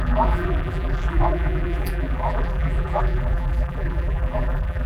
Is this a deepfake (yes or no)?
yes